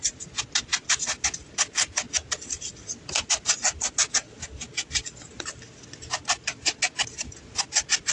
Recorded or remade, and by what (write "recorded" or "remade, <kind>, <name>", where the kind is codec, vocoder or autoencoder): recorded